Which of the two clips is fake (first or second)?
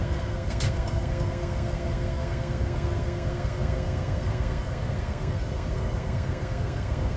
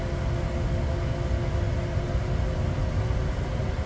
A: first